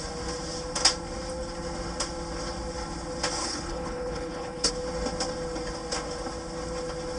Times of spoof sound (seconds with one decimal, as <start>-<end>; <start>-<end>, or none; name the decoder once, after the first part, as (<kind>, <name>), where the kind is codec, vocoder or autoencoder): 3.4-4.7 (codec, HILCodec)